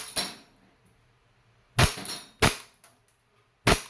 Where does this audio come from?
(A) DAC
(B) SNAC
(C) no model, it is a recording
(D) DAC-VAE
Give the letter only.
C